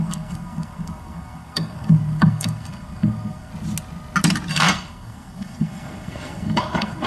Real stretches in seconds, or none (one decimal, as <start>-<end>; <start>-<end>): 3.5-4.5